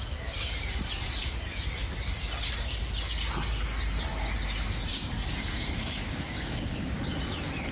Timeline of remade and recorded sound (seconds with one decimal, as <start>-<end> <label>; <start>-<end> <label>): 0.0-4.9 recorded; 4.9-7.0 remade; 7.0-7.7 recorded